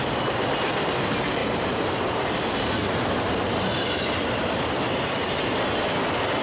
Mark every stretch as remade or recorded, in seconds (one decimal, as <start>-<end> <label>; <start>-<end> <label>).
0.0-1.4 recorded; 1.4-4.9 remade; 4.9-6.4 recorded